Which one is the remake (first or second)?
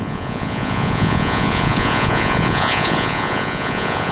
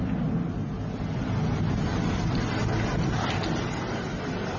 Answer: first